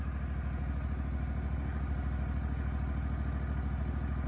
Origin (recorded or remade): recorded